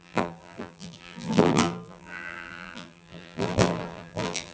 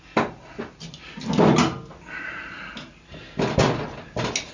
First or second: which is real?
second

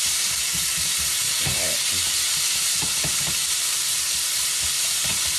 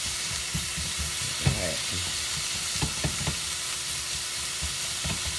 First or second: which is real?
second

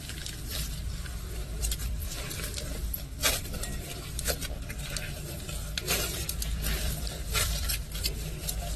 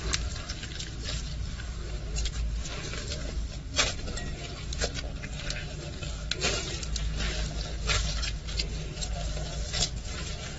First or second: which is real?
second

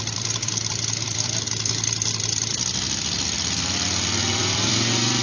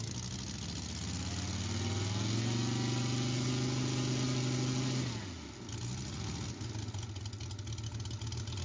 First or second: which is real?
second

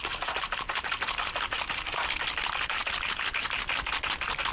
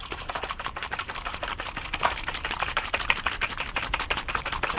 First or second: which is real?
first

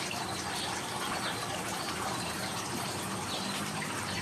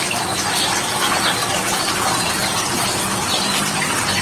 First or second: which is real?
second